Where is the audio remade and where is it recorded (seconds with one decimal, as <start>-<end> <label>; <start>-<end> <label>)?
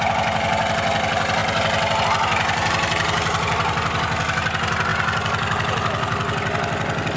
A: 0.0-7.2 recorded